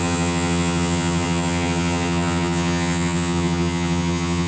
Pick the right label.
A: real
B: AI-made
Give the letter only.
B